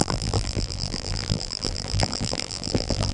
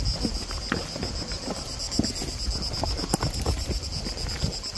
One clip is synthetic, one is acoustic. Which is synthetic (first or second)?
first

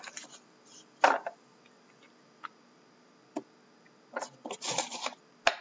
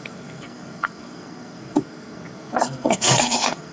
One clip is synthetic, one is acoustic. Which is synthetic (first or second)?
second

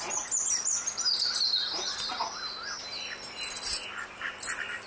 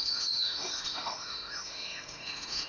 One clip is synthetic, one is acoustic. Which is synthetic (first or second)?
second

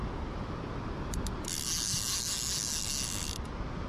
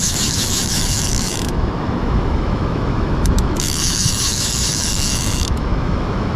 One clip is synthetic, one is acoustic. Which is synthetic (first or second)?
second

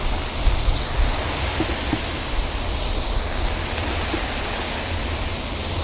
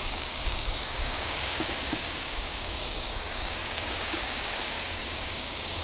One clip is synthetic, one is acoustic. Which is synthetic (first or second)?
second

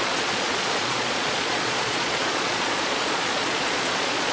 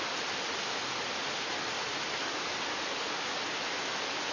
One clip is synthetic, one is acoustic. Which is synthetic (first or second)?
first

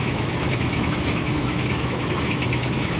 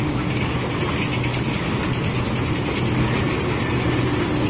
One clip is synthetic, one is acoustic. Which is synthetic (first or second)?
first